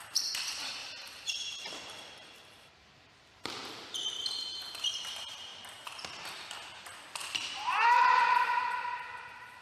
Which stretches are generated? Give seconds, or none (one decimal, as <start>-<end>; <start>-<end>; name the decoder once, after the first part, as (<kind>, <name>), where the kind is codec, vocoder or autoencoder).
0.0-5.5 (vocoder, BigVGAN v2); 7.5-9.6